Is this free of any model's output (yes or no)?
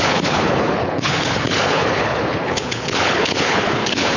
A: no